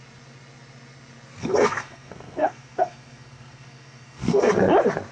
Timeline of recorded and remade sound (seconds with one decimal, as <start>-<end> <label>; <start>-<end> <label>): 0.0-1.4 recorded; 1.4-4.5 remade; 4.5-5.1 recorded